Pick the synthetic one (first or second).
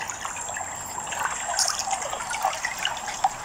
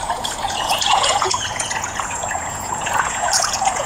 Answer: second